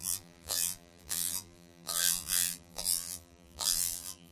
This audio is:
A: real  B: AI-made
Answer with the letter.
B